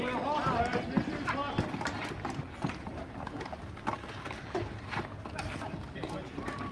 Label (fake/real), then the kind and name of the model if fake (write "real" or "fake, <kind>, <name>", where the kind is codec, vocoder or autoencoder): real